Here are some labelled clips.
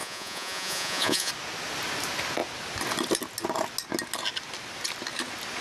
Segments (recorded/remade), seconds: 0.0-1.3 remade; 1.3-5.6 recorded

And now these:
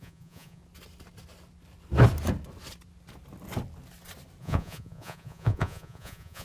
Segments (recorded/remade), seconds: 0.0-0.6 remade; 0.6-4.4 recorded; 4.4-6.4 remade

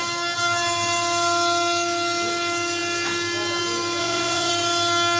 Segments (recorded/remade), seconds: 0.0-4.0 recorded; 4.0-4.5 remade; 4.5-5.2 recorded

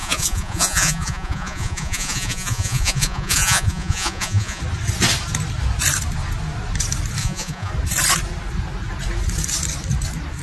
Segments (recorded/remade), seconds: 0.0-4.6 remade; 4.6-7.2 recorded; 7.2-7.7 remade; 7.7-10.4 recorded

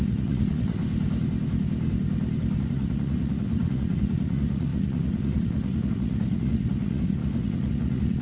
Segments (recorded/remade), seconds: 0.0-0.8 remade; 0.8-2.6 recorded; 2.6-8.2 remade

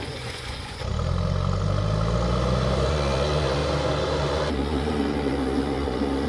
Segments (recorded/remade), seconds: 0.0-0.9 remade; 0.9-2.9 recorded; 2.9-3.6 remade; 3.6-4.2 recorded; 4.2-6.3 remade

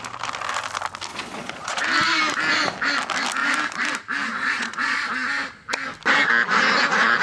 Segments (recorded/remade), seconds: 0.0-1.1 recorded; 1.1-1.8 remade; 1.8-4.3 recorded; 4.3-5.1 remade; 5.1-7.2 recorded

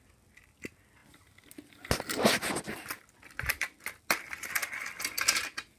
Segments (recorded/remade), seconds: 0.0-5.8 recorded